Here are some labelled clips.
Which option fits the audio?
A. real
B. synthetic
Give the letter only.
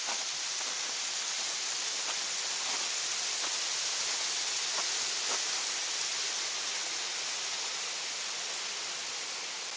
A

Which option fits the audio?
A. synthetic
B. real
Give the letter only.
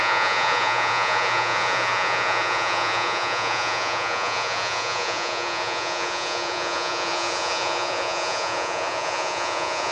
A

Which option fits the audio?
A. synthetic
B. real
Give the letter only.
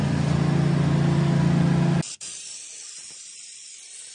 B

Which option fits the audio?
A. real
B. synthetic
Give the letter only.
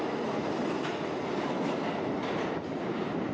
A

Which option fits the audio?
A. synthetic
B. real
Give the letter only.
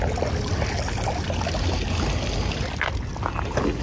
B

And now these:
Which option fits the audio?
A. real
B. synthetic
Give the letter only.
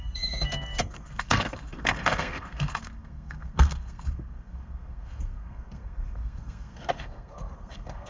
B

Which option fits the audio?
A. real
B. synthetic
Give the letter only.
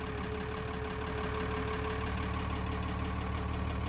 A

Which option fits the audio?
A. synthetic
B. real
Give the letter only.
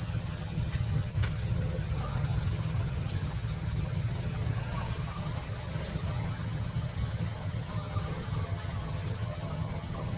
A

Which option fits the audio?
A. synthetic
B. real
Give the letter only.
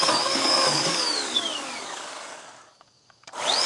A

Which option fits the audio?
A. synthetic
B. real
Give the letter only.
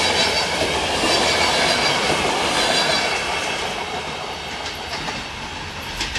B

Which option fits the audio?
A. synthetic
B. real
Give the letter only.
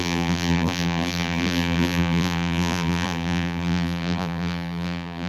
A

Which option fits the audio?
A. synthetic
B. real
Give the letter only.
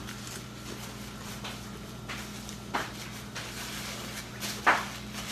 B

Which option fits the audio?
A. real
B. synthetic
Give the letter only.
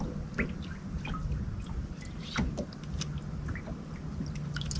A